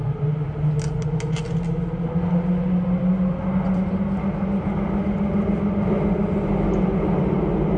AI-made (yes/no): no